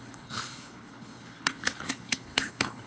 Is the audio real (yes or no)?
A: no